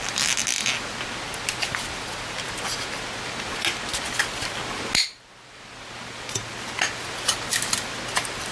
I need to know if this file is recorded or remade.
recorded